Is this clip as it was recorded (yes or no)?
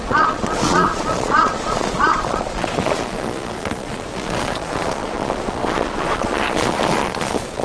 no